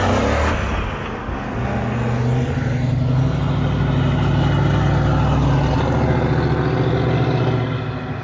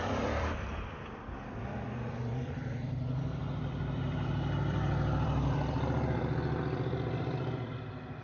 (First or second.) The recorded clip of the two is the first